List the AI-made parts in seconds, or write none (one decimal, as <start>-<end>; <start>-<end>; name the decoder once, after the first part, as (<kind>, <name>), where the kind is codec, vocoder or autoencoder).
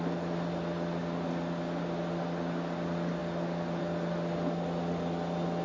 none